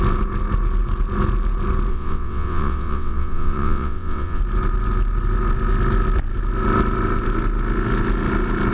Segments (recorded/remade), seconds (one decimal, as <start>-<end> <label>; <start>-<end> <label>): 0.0-1.9 recorded; 1.9-4.4 remade; 4.4-8.7 recorded